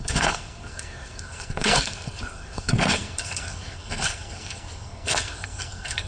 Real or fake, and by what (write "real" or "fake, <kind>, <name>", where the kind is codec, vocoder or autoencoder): fake, codec, SNAC